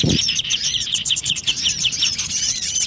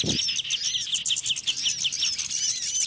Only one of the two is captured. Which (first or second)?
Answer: second